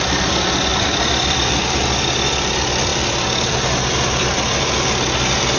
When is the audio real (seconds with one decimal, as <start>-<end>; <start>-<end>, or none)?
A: 0.0-0.7; 1.5-2.9; 4.0-5.6

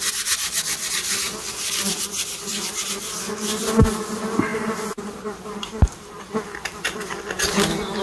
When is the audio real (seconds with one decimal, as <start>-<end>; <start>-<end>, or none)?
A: 0.0-4.5; 6.2-8.0

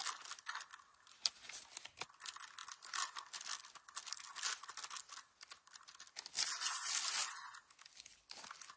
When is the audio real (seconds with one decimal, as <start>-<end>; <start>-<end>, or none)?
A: 0.0-8.8

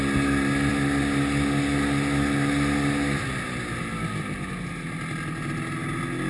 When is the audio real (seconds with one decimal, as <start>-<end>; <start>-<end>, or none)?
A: 0.0-6.3

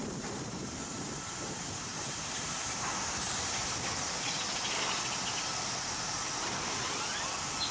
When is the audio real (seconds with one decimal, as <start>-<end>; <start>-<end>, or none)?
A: 3.0-7.7

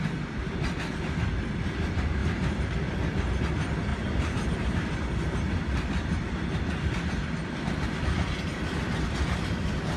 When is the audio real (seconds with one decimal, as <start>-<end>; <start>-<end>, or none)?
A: 0.0-2.2; 2.9-3.9; 4.9-10.0

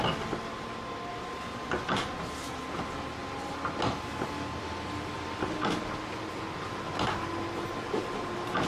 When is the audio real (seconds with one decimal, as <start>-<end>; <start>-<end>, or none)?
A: 0.0-8.7